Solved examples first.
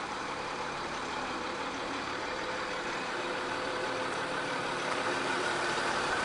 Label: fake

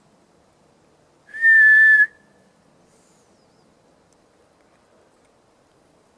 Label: real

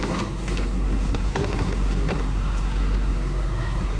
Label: fake